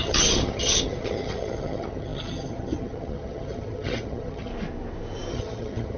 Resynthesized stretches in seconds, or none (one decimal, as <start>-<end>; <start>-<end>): 0.0-4.5; 5.3-6.0